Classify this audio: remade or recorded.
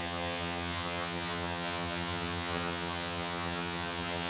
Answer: remade